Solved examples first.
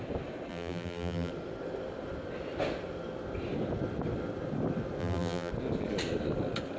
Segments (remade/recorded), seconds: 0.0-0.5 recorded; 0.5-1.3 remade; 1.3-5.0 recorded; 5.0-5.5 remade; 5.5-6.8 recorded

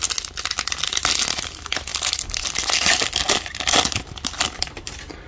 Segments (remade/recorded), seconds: 0.0-1.9 recorded; 1.9-5.3 remade

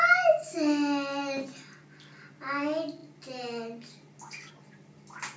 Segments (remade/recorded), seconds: 0.0-5.4 recorded

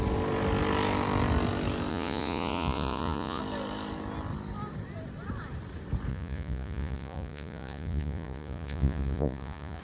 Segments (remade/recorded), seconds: 0.0-1.9 recorded; 1.9-3.4 remade; 3.4-6.1 recorded; 6.1-9.8 remade

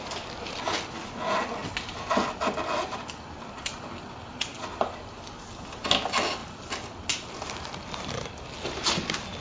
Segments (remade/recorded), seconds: 0.0-9.4 recorded

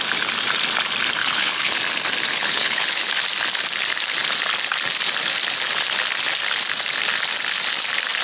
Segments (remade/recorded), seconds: 0.0-1.2 recorded; 1.2-1.8 remade; 1.8-2.3 recorded; 2.3-3.1 remade; 3.1-8.2 recorded

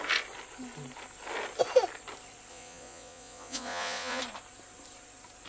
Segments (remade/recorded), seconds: 0.0-2.5 recorded; 2.5-4.2 remade; 4.2-5.5 recorded